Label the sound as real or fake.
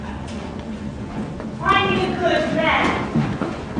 fake